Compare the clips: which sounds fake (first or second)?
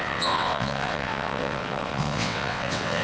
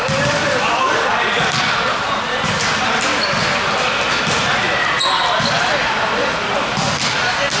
first